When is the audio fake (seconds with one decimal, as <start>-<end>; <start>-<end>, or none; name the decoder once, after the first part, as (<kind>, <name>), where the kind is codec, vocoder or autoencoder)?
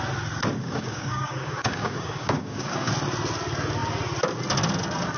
0.6-2.9 (codec, DAC)